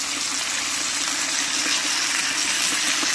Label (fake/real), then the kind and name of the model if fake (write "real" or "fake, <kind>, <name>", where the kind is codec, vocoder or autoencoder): real